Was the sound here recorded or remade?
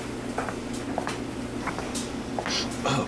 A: recorded